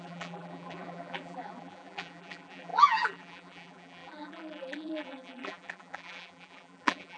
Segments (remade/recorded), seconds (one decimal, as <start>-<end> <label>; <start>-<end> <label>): 0.0-7.2 remade